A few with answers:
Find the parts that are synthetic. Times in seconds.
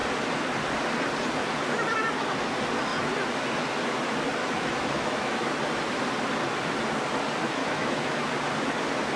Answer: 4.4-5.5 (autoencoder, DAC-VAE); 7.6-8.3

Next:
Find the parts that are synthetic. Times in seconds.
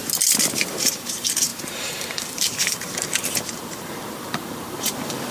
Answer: 0.8-5.3 (vocoder, BigVGAN v2)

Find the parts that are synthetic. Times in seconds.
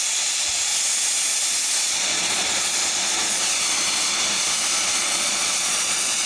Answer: 0.0-0.7 (vocoder, Vocos); 1.8-3.4; 5.0-6.3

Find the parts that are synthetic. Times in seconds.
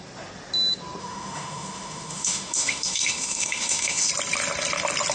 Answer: 1.0-4.1 (autoencoder, DAC-VAE)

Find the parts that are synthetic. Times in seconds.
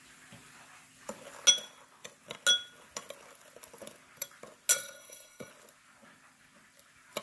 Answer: 4.7-5.5 (codec, SNAC)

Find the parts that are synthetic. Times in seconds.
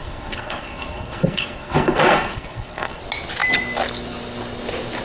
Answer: 0.0-3.0 (codec, SNAC)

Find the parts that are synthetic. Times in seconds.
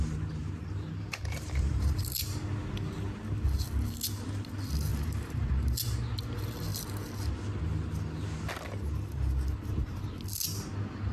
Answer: 0.4-2.0 (vocoder, BigVGAN v2); 4.9-5.5